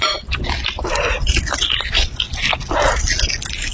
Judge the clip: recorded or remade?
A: recorded